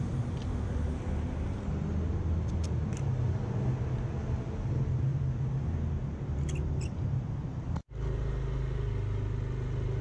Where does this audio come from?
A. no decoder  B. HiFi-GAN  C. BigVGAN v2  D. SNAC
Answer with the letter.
A